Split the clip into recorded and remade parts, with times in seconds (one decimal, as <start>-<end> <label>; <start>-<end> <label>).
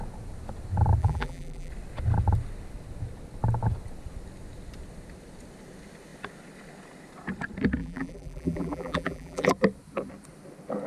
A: 0.0-1.0 recorded; 1.0-1.7 remade; 1.7-7.8 recorded; 7.8-9.5 remade; 9.5-10.9 recorded